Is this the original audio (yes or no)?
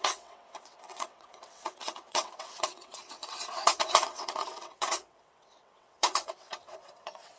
no